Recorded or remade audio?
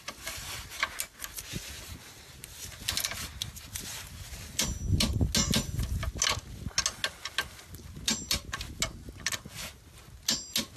recorded